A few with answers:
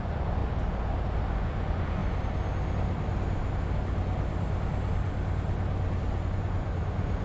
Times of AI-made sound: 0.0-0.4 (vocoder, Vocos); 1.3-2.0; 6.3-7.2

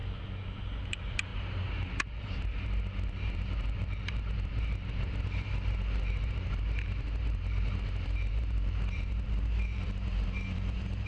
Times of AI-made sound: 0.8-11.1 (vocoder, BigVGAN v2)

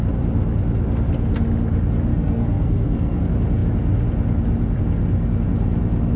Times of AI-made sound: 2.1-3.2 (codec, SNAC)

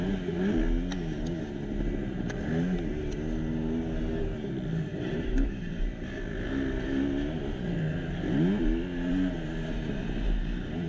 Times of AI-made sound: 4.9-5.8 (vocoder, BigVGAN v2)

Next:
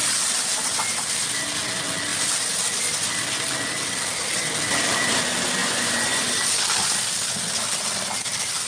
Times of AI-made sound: 5.6-6.3 (vocoder, Vocos)

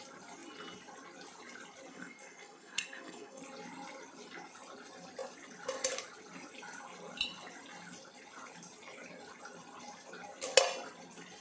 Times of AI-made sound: 1.9-3.4 (codec, SNAC)

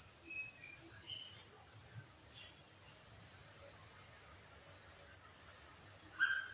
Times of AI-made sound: 0.4-1.1 (vocoder, BigVGAN v2); 3.4-4.4

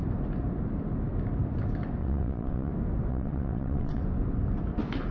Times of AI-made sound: 2.0-2.7 (vocoder, WaveNeXt); 3.1-4.0